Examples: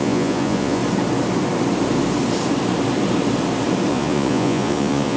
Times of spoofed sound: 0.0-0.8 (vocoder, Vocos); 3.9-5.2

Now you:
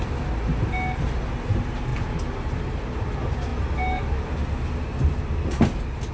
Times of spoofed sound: none